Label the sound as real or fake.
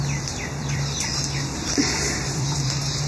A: fake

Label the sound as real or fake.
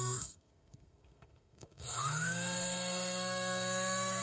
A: fake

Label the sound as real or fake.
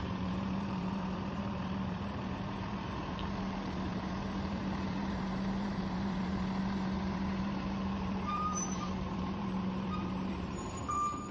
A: fake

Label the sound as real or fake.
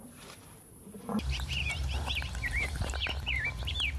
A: fake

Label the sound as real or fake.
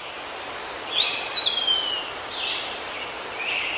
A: real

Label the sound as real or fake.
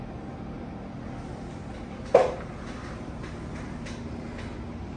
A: real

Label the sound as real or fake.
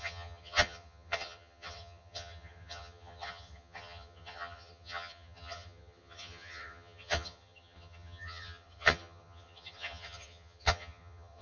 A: fake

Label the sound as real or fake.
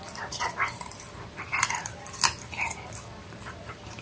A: fake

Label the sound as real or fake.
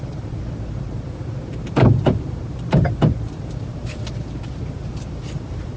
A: fake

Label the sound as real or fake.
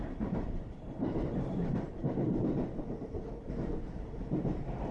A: fake